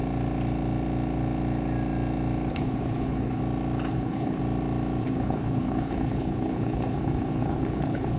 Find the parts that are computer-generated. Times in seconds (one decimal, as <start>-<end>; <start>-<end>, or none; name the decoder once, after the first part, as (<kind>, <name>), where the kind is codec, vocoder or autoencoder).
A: 2.5-3.4 (codec, HILCodec); 3.9-4.4; 5.0-8.2